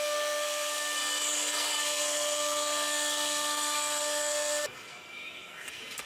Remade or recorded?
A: remade